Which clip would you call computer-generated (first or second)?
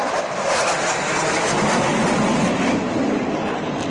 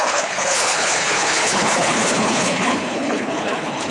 second